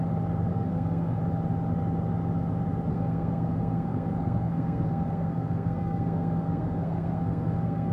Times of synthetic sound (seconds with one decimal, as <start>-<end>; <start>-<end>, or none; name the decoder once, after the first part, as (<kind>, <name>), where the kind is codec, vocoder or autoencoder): 0.5-1.2 (codec, SNAC); 2.9-7.9